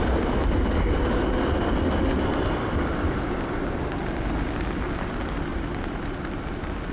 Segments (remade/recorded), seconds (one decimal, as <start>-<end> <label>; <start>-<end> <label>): 0.0-5.5 recorded; 5.5-6.1 remade; 6.1-6.9 recorded